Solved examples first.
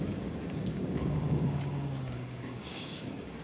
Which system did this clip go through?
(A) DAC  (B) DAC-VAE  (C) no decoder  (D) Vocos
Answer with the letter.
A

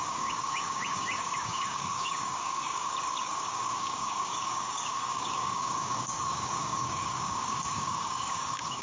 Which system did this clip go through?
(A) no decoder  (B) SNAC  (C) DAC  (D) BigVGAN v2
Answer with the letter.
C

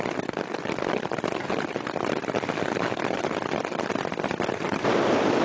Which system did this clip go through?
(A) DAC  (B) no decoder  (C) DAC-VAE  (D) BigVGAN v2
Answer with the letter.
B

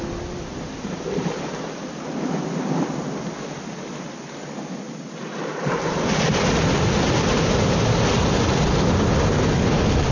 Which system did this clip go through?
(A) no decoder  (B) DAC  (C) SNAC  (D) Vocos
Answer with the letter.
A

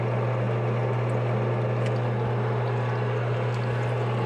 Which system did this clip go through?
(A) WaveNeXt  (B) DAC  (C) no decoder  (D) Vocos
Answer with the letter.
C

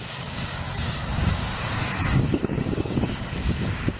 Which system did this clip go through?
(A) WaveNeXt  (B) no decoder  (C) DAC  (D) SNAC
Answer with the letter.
C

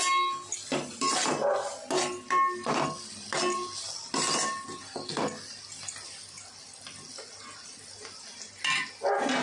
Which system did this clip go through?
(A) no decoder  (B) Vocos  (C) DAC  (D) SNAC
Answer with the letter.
A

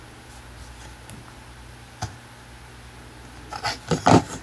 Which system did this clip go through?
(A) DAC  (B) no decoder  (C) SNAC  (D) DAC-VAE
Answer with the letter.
B